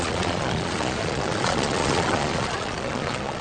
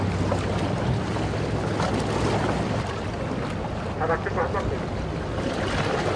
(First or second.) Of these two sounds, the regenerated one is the first